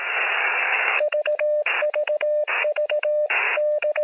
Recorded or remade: remade